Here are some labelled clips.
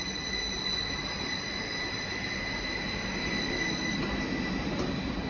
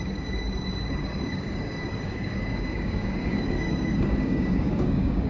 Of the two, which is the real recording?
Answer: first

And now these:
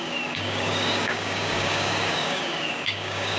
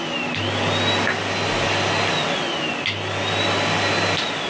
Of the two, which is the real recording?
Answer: second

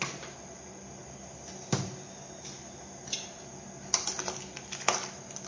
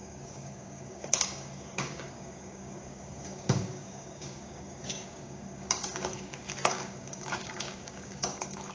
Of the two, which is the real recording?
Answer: first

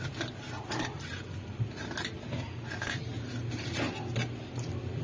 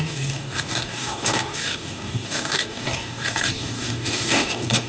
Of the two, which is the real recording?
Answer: first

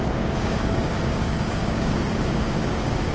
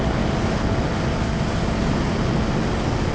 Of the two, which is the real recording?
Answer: second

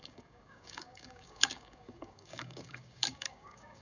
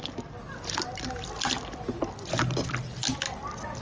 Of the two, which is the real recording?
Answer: second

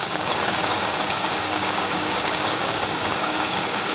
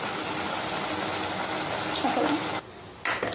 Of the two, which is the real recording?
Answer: second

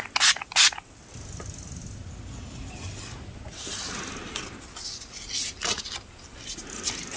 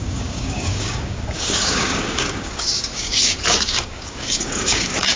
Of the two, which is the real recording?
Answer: first